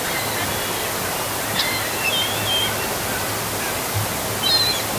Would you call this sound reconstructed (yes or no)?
no